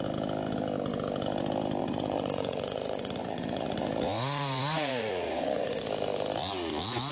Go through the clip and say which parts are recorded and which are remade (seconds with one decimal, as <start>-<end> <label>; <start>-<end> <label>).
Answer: 0.0-1.8 recorded; 1.8-5.8 remade; 5.8-7.1 recorded